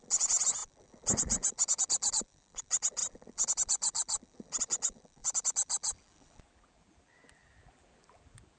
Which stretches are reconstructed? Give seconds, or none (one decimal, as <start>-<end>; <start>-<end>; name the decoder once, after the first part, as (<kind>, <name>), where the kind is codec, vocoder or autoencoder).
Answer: 0.0-8.6 (vocoder, BigVGAN v2)